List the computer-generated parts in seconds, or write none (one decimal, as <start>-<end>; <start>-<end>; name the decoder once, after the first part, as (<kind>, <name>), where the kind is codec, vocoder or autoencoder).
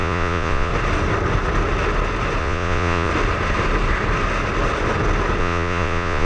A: 0.0-0.7 (vocoder, Vocos); 2.4-3.1; 5.4-6.2